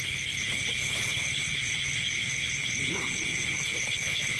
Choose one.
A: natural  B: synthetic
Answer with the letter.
B